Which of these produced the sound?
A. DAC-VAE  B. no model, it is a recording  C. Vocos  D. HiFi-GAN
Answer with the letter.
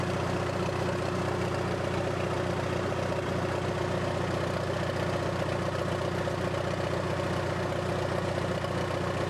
B